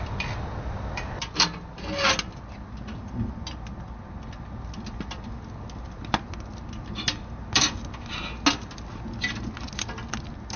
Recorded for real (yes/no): yes